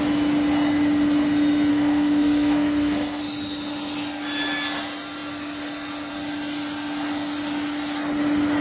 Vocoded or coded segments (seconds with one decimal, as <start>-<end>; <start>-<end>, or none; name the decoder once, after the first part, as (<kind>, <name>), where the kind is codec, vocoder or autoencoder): 1.7-3.2 (codec, SNAC)